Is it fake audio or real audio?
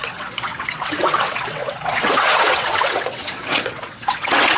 fake